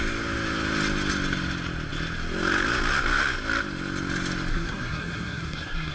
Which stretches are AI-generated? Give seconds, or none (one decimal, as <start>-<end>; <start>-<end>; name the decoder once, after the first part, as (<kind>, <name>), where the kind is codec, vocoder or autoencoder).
4.5-5.9 (codec, SNAC)